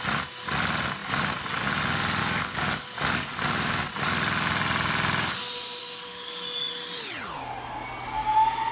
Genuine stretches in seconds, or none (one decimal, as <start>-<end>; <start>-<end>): 0.0-2.2; 3.9-5.8; 6.7-8.7